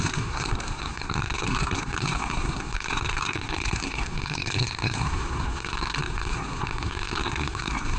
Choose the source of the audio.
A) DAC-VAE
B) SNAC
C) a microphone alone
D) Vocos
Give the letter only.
B